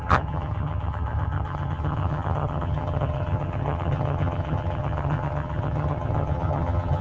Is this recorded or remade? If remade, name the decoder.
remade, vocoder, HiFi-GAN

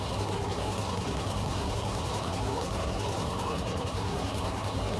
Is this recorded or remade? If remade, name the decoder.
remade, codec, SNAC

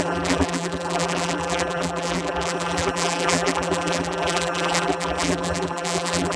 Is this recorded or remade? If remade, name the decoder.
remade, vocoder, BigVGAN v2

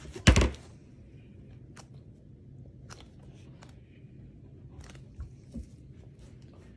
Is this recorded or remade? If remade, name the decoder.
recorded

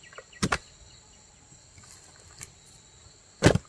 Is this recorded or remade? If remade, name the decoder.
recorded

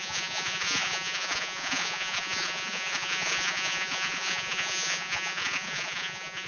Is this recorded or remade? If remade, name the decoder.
remade, vocoder, Vocos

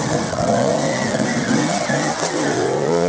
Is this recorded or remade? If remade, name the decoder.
remade, vocoder, WaveNeXt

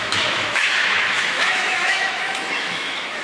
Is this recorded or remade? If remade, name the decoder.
remade, autoencoder, DAC-VAE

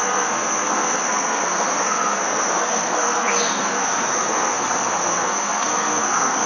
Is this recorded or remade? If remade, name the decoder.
remade, codec, SNAC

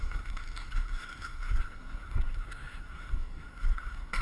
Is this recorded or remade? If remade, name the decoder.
remade, codec, SNAC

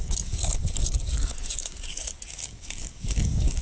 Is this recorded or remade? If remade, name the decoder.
remade, codec, DAC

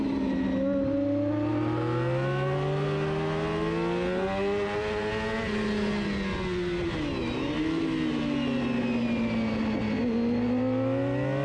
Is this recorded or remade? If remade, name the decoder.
recorded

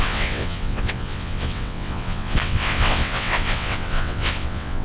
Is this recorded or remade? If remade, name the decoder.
remade, vocoder, WaveNeXt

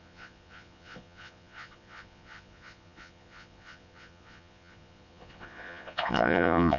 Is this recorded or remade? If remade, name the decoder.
remade, vocoder, Vocos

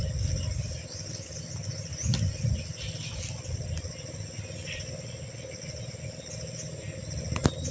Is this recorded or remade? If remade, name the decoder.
recorded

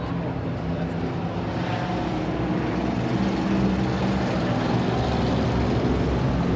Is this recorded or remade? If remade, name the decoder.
recorded